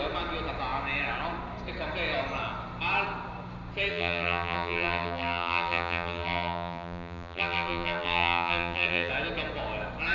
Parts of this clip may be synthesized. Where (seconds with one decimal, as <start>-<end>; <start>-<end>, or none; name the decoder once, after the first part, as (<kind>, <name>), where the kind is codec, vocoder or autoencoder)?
3.9-9.1 (vocoder, BigVGAN v2)